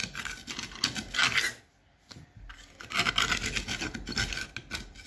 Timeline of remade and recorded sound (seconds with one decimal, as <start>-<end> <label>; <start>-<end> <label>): 0.0-5.1 recorded